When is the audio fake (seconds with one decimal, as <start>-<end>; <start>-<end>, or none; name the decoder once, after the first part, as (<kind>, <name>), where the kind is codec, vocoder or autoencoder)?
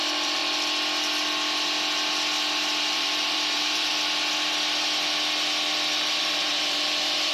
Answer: 0.0-0.4 (vocoder, BigVGAN v2); 2.8-3.9; 6.2-7.3